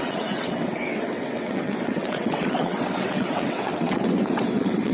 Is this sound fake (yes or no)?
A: yes